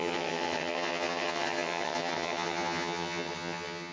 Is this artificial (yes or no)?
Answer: yes